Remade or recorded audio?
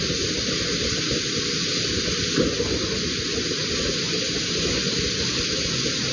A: recorded